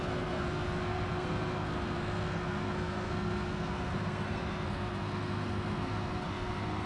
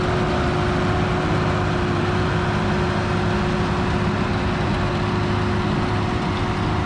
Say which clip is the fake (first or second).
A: first